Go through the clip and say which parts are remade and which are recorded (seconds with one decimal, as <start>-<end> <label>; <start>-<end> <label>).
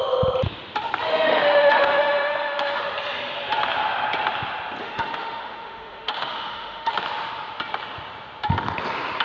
0.0-1.1 recorded; 1.1-2.8 remade; 2.8-4.8 recorded; 4.8-6.9 remade; 6.9-9.2 recorded